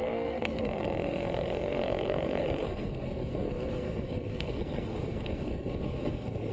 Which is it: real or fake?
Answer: fake